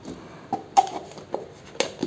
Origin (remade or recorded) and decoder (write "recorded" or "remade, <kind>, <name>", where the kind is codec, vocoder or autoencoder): recorded